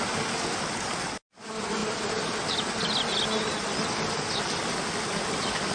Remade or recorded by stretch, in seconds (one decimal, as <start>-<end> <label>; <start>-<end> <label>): 0.0-5.7 recorded

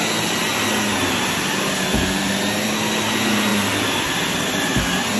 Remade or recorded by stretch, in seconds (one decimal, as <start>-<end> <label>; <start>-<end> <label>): 0.0-0.9 recorded; 0.9-2.3 remade; 2.3-3.5 recorded; 3.5-4.8 remade; 4.8-5.2 recorded

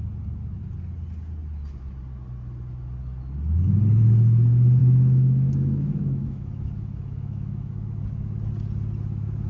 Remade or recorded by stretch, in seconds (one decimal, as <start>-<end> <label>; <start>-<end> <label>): 0.0-4.8 recorded; 4.8-8.0 remade; 8.0-9.5 recorded

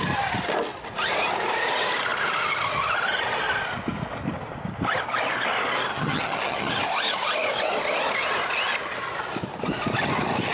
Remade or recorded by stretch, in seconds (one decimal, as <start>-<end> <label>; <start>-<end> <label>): 0.0-5.9 recorded; 5.9-6.7 remade; 6.7-10.5 recorded